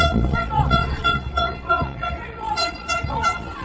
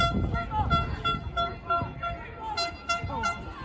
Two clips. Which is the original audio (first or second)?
second